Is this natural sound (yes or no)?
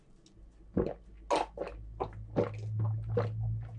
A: yes